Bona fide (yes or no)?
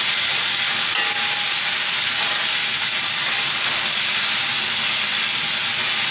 yes